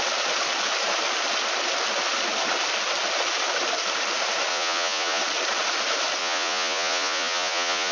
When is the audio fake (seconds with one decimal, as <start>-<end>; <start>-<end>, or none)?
4.5-5.2; 6.2-7.9